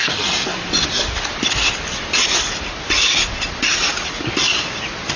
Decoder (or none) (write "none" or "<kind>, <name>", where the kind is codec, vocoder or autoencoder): none